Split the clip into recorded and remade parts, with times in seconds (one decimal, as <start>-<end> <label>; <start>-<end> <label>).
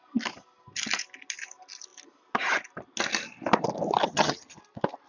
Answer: 0.0-4.0 recorded; 4.0-4.6 remade; 4.6-5.1 recorded